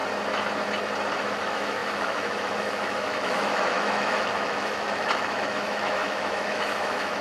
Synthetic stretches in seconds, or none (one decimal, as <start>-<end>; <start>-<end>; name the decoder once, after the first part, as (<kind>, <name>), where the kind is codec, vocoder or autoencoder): 1.2-7.2 (autoencoder, DAC-VAE)